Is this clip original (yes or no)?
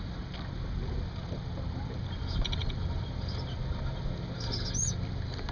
yes